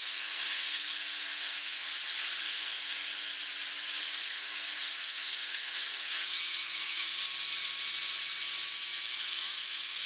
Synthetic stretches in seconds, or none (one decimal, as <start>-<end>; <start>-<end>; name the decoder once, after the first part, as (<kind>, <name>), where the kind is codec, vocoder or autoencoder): 0.0-1.9 (codec, SNAC); 2.4-3.3; 4.0-7.2; 9.1-10.1